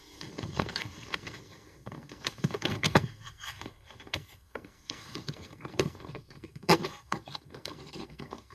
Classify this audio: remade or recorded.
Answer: remade